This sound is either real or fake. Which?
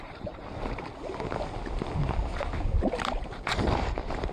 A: real